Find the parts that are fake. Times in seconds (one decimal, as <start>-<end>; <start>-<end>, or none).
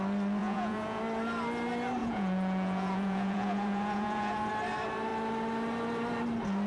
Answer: 0.4-1.0; 2.0-4.5